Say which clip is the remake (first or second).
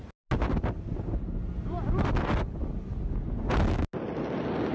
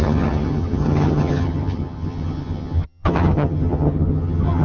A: second